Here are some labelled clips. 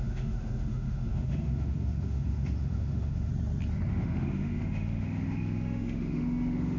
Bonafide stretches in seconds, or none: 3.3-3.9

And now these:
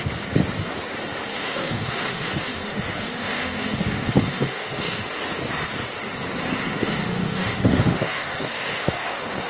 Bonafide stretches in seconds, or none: 0.0-1.3; 5.2-6.7

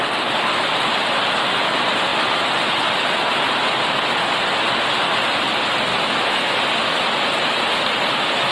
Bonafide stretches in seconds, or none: 0.0-5.9; 6.6-8.5

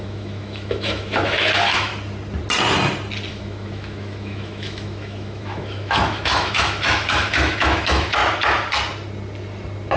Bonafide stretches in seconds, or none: 1.9-3.3; 8.2-10.0

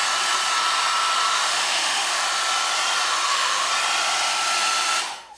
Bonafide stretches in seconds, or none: 0.0-1.3; 2.2-3.3; 3.7-5.0

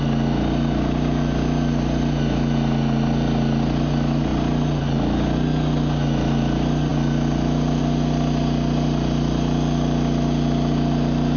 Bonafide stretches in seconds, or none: 0.0-11.4

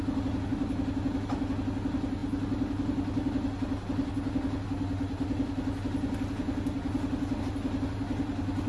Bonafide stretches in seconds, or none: 0.0-8.7